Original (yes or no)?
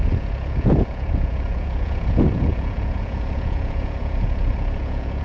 no